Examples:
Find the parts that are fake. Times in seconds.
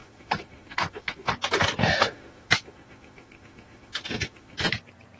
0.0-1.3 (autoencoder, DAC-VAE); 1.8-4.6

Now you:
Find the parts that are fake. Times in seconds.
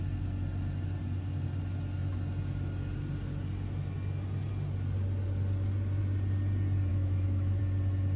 6.9-7.6 (autoencoder, DAC-VAE)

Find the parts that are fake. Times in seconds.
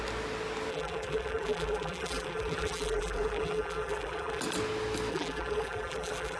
0.7-4.4 (vocoder, BigVGAN v2); 5.1-6.4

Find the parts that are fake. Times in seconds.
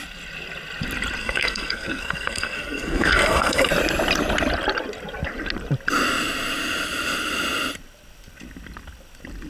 1.2-3.7 (codec, SNAC)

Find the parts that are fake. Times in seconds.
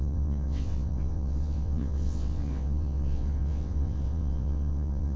0.0-5.2 (vocoder, WaveNeXt)